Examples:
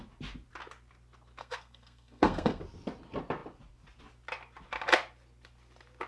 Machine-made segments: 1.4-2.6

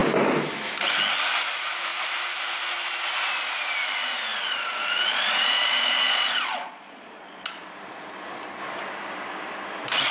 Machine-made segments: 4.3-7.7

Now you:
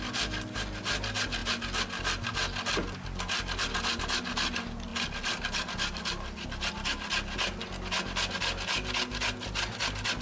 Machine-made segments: none

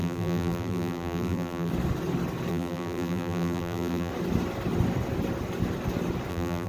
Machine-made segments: 0.0-1.7; 2.5-4.1; 6.3-6.7

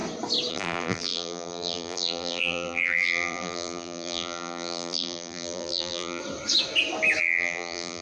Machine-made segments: 0.5-6.2; 7.2-8.0

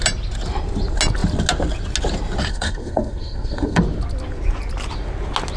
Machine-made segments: 2.5-3.8

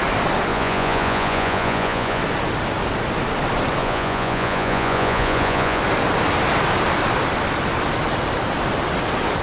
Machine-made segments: 0.5-2.2; 3.8-5.8